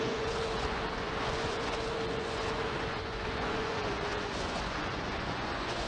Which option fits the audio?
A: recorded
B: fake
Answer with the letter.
B